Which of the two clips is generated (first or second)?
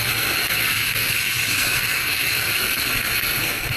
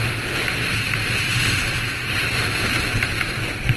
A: first